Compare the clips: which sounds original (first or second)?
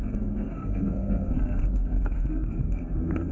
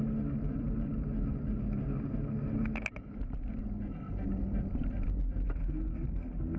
second